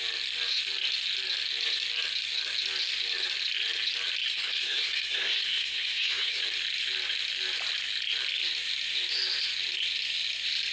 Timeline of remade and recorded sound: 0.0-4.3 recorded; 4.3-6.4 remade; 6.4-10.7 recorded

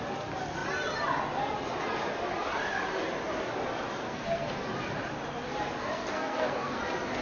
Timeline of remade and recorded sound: 0.0-4.0 recorded; 4.0-4.5 remade; 4.5-5.8 recorded; 5.8-6.8 remade; 6.8-7.2 recorded

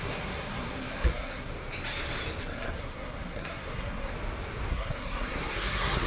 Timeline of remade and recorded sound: 0.0-1.5 remade; 1.5-2.4 recorded; 2.4-4.1 remade; 4.1-4.7 recorded; 4.7-6.1 remade

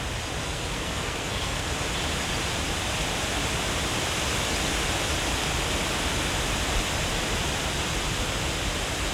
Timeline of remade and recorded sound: 0.0-0.4 recorded; 0.4-1.7 remade; 1.7-9.1 recorded

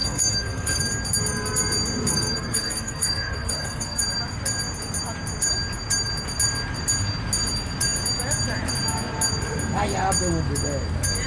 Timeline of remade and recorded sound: 0.0-0.8 remade; 0.8-2.1 recorded; 2.1-4.0 remade; 4.0-11.3 recorded

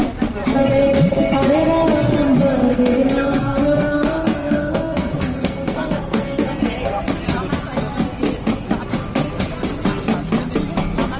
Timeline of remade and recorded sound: 0.0-2.6 recorded; 2.6-7.1 remade; 7.1-11.2 recorded

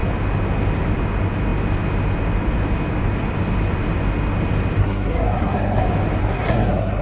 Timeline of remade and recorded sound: 0.0-4.8 recorded; 4.8-5.8 remade; 5.8-6.2 recorded; 6.2-7.0 remade

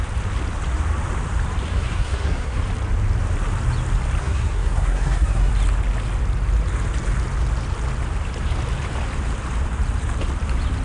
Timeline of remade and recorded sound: 0.0-1.7 recorded; 1.7-2.6 remade; 2.6-4.2 recorded; 4.2-5.5 remade; 5.5-10.8 recorded